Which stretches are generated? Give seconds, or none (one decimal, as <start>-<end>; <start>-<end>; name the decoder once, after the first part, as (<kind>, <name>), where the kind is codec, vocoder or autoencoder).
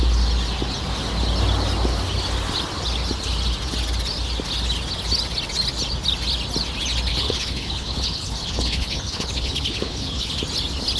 7.1-10.3 (codec, HILCodec)